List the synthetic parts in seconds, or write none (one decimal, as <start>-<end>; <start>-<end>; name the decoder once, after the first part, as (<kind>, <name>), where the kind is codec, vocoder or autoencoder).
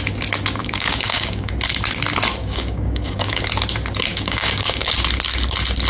0.6-1.5 (codec, DAC); 2.4-3.4; 4.1-4.9